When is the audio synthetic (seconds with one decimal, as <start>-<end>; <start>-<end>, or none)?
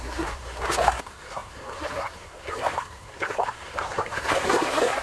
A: 0.0-5.0